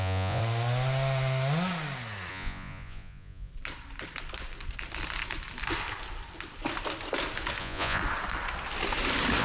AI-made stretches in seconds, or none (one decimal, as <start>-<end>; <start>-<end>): 0.0-0.4; 2.3-3.5; 7.6-8.0